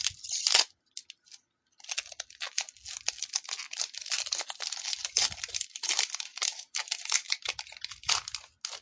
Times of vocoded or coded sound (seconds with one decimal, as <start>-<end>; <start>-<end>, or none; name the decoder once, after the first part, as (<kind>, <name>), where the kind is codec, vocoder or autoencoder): 6.3-7.6 (vocoder, BigVGAN v2)

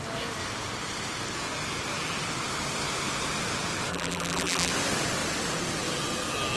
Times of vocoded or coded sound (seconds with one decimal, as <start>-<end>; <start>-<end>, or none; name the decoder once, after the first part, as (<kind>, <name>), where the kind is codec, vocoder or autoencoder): 3.9-4.7 (vocoder, BigVGAN v2)